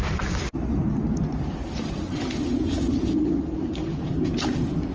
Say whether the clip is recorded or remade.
recorded